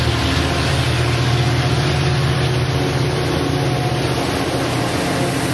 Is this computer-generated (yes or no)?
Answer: no